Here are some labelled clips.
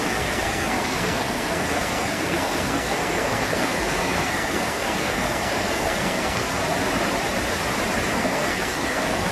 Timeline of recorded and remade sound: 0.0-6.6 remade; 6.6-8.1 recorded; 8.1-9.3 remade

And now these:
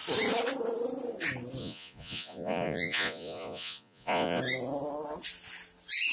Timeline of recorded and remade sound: 0.0-1.6 recorded; 1.6-4.4 remade; 4.4-6.1 recorded

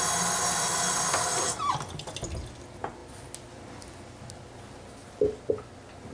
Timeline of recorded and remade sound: 0.0-6.1 recorded

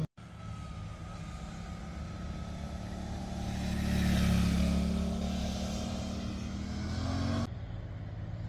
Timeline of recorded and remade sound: 0.0-5.4 recorded; 5.4-6.0 remade; 6.0-8.5 recorded

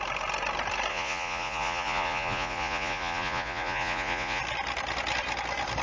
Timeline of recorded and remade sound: 0.0-0.9 recorded; 0.9-4.4 remade; 4.4-5.8 recorded

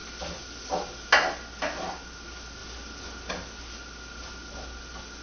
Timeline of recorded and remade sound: 0.0-5.2 recorded

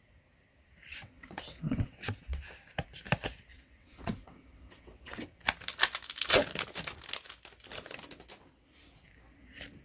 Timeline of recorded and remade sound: 0.0-0.9 recorded; 0.9-2.4 remade; 2.4-3.5 recorded; 3.5-5.4 remade; 5.4-9.8 recorded

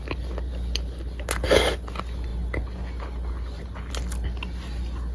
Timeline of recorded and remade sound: 0.0-5.1 recorded